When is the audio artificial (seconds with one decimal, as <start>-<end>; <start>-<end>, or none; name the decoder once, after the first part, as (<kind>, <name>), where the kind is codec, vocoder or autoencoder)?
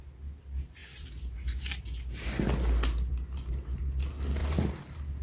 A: 0.8-2.3 (vocoder, BigVGAN v2); 3.1-3.8; 4.4-5.2